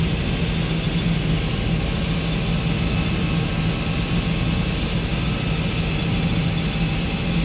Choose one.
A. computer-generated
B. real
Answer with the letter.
B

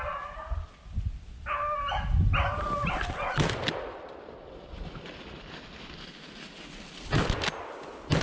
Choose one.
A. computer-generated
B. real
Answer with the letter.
B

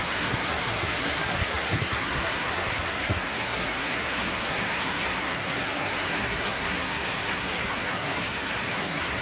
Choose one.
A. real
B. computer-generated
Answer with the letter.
B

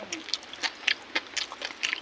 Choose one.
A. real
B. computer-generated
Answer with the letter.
A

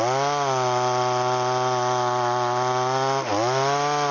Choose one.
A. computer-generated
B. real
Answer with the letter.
B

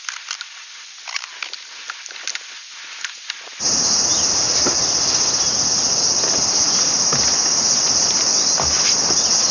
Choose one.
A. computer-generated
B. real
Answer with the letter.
B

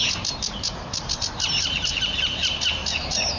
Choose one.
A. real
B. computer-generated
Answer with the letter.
B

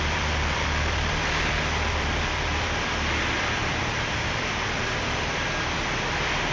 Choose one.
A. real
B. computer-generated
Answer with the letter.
B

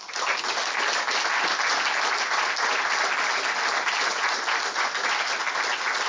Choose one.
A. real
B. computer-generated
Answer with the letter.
A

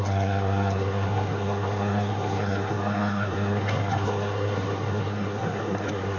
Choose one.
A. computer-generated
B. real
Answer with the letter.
A